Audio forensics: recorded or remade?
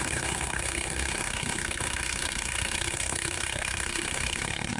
remade